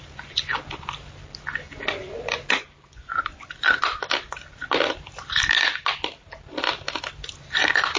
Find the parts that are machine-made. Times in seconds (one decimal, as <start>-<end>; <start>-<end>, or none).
2.9-3.8

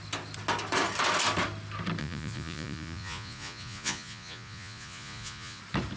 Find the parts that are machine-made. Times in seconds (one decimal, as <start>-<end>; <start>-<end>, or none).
2.0-5.6

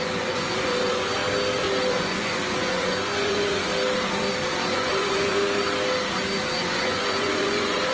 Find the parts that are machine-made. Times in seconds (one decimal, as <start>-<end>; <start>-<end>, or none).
0.0-1.2; 1.9-3.7; 4.7-5.4; 6.6-7.9

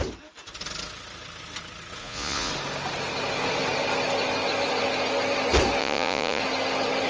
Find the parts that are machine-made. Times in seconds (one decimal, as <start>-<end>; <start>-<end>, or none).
2.0-2.5; 5.8-6.4

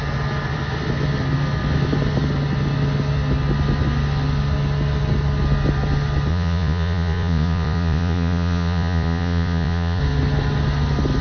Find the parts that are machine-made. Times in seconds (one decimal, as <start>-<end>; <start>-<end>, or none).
6.3-10.0

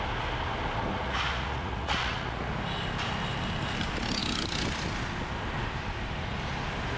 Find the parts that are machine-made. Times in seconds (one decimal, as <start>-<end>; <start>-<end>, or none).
0.9-2.5

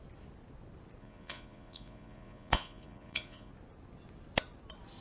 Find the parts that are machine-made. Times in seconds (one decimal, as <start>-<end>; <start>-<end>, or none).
1.0-3.5